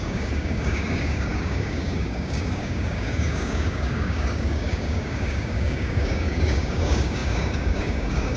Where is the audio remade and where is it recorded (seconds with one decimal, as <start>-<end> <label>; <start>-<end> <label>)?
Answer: 0.0-8.4 remade